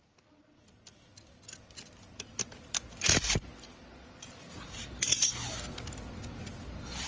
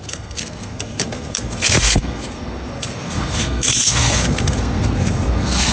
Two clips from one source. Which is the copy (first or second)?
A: second